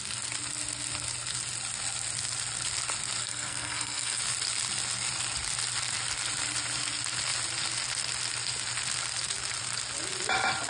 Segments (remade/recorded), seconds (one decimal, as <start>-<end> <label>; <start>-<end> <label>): 0.0-3.2 recorded; 3.2-4.2 remade; 4.2-10.7 recorded